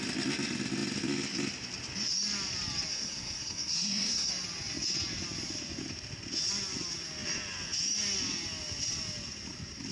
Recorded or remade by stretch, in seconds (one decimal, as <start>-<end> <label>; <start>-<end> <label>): 0.0-2.9 recorded; 2.9-4.3 remade; 4.3-9.9 recorded